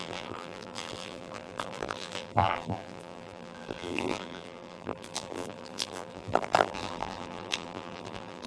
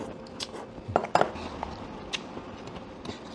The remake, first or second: first